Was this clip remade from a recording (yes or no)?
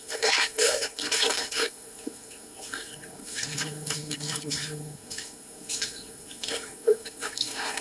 yes